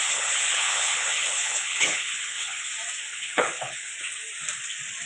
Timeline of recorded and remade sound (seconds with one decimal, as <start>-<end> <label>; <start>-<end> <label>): 0.0-2.7 remade; 2.7-3.1 recorded; 3.1-3.9 remade; 3.9-5.1 recorded